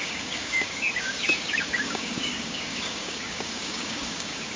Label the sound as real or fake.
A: fake